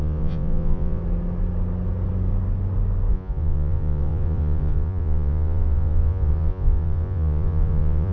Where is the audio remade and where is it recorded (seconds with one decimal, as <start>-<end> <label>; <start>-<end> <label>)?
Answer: 0.0-1.0 remade; 1.0-3.1 recorded; 3.1-8.1 remade